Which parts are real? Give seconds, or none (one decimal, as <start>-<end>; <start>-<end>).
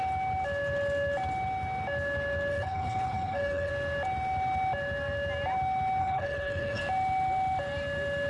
0.0-2.5; 3.7-6.0; 6.8-8.3